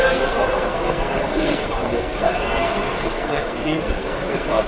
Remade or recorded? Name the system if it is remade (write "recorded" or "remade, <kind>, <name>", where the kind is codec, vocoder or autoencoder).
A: remade, codec, SNAC